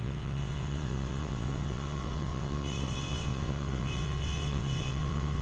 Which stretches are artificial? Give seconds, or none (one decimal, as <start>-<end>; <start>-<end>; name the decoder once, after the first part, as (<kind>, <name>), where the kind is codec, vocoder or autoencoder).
0.0-5.4 (vocoder, WaveNeXt)